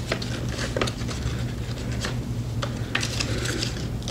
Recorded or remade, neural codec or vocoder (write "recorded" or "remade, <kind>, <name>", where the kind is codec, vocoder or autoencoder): recorded